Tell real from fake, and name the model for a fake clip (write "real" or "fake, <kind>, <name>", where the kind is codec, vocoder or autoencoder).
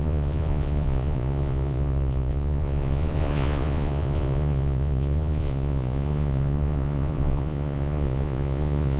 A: fake, vocoder, Vocos